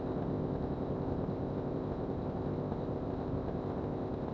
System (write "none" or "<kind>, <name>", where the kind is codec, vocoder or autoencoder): codec, ZipCodec